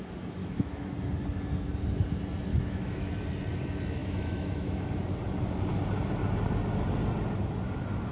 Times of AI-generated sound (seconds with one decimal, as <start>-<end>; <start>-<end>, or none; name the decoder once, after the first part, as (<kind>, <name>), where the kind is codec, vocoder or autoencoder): 0.4-0.9 (autoencoder, DAC-VAE); 2.5-3.1; 4.0-4.9